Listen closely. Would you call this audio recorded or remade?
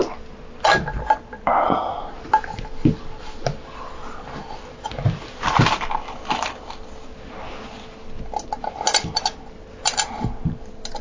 recorded